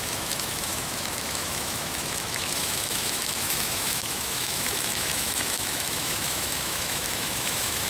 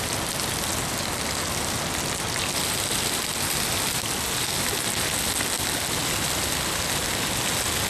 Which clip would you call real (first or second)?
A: second